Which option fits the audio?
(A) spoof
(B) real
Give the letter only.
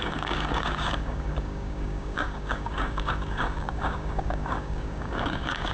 A